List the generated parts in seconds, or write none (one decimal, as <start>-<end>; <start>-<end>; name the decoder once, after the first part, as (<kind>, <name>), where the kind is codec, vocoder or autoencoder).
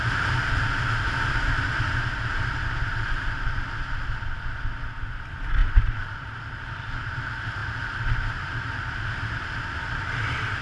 5.6-6.4 (vocoder, BigVGAN v2)